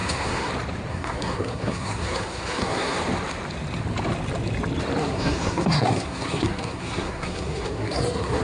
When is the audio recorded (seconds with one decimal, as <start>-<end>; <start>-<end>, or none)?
0.5-0.9; 3.0-5.0

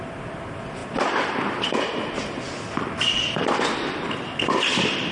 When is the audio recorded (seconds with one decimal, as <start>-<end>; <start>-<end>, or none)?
0.0-5.1

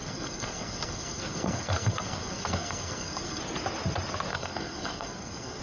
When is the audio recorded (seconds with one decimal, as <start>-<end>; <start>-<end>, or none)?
3.4-4.3

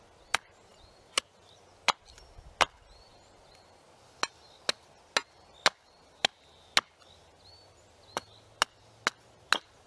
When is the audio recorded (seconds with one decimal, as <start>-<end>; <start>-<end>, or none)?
0.0-9.9